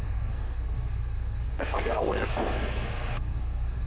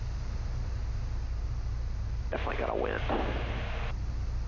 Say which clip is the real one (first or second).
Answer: second